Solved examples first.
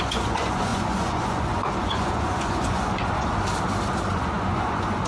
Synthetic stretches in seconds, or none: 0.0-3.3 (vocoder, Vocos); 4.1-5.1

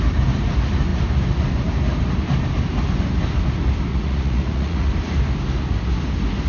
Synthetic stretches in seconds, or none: 3.9-4.9 (vocoder, Vocos)

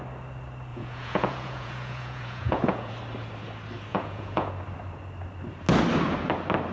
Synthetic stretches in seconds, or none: 0.7-2.9 (vocoder, Vocos); 3.9-4.5